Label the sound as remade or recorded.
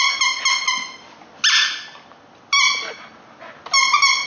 recorded